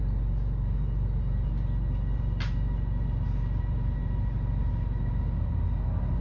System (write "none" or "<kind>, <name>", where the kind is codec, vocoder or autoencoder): none